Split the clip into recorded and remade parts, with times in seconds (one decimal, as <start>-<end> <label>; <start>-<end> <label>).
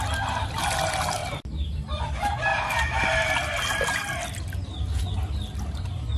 0.0-1.2 recorded; 1.2-2.1 remade; 2.1-2.5 recorded; 2.5-4.4 remade; 4.4-6.2 recorded